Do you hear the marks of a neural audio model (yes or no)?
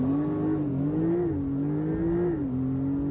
no